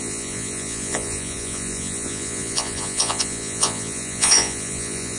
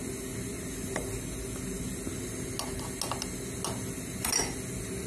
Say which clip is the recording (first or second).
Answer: second